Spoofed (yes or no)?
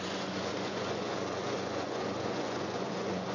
yes